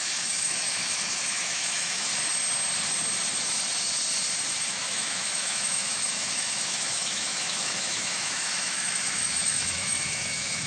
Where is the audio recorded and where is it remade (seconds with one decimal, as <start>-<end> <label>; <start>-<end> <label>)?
0.0-2.1 remade; 2.1-4.7 recorded; 4.7-10.7 remade